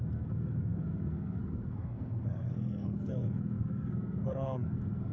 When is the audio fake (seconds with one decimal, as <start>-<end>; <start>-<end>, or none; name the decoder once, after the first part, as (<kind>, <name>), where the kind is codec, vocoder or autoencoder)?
0.0-5.1 (codec, SNAC)